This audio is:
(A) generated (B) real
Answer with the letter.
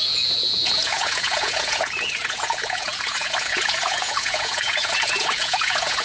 A